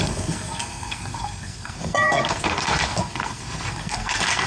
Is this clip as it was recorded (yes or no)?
no